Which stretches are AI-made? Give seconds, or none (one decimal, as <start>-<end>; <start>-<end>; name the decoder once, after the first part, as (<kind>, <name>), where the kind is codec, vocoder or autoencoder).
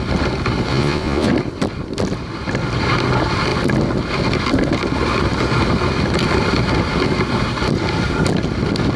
0.7-1.3 (vocoder, Vocos)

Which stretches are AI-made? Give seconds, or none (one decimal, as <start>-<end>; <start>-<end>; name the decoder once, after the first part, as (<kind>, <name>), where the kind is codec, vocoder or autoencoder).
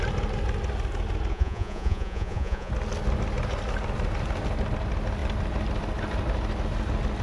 1.3-2.7 (vocoder, Vocos)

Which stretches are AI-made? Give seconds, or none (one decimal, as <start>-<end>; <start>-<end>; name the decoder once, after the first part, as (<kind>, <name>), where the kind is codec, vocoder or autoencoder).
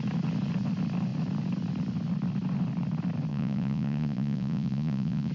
3.3-5.3 (vocoder, Vocos)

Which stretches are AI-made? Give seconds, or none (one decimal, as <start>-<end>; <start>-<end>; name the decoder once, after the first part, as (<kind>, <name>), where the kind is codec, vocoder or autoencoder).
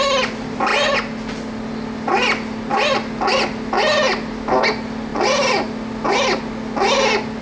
none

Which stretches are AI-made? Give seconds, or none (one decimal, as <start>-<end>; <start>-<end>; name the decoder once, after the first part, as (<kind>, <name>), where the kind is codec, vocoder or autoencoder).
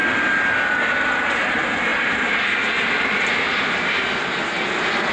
none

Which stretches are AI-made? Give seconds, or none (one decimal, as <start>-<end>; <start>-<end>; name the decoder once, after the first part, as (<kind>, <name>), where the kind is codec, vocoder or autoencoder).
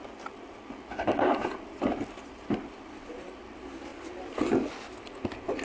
none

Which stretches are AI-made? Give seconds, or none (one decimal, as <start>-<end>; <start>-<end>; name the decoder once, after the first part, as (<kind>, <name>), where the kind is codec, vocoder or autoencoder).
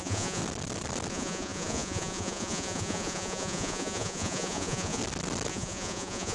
0.0-0.4 (vocoder, Vocos); 1.1-5.0; 5.5-6.3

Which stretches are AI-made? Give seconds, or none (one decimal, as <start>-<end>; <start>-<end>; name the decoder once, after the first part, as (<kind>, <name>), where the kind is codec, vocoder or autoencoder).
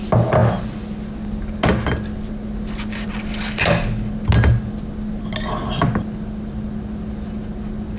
none